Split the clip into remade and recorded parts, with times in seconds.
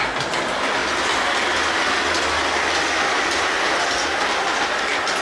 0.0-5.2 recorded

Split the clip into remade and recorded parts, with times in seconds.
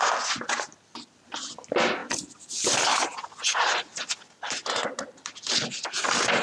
0.0-6.4 recorded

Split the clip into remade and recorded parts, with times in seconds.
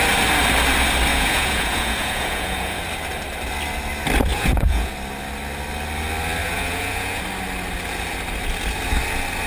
0.0-1.1 recorded; 1.1-2.8 remade; 2.8-4.3 recorded; 4.3-4.9 remade; 4.9-6.4 recorded; 6.4-7.2 remade; 7.2-9.5 recorded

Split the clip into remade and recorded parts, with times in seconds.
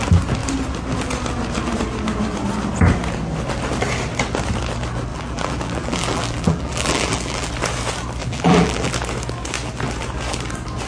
0.0-5.1 recorded; 5.1-7.5 remade; 7.5-8.2 recorded; 8.2-8.9 remade; 8.9-10.9 recorded